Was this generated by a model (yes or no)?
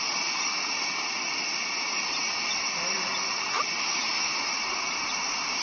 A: no